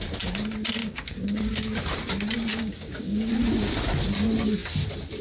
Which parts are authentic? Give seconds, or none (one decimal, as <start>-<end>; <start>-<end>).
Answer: 0.0-0.8; 1.4-2.5; 3.3-5.2